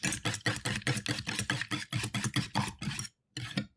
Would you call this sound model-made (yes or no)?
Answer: no